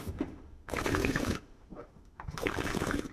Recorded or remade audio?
remade